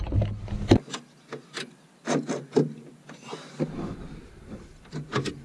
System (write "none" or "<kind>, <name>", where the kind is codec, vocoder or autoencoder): none